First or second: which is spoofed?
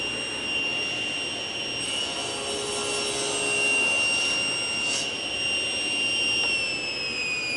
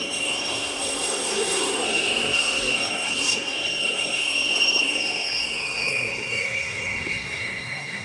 second